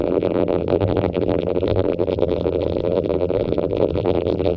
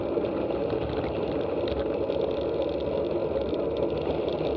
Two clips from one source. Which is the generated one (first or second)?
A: first